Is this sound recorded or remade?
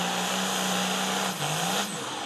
recorded